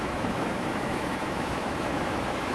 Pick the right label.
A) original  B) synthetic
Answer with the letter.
B